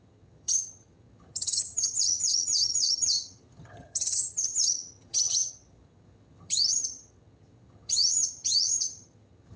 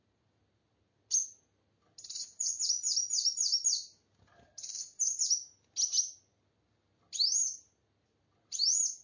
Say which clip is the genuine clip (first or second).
second